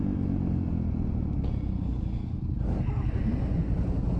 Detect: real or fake real